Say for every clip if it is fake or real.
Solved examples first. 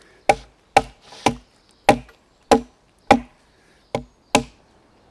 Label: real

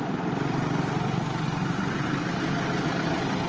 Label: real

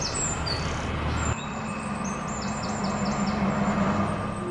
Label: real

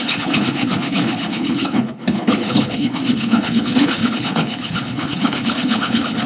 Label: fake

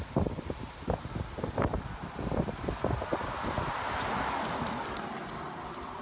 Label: real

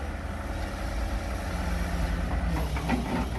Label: real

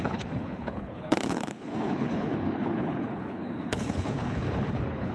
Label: fake